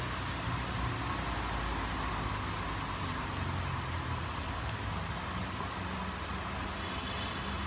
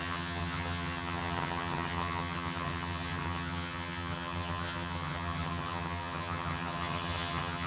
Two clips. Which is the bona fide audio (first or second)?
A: first